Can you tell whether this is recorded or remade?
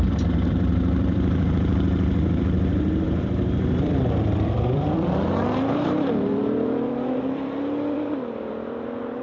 remade